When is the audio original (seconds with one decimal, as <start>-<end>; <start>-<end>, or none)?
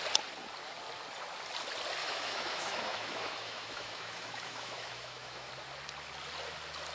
0.0-2.0; 5.5-6.9